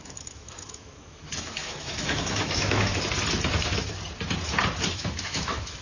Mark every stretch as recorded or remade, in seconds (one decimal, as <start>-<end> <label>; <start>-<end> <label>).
0.0-2.9 remade; 2.9-4.9 recorded; 4.9-5.8 remade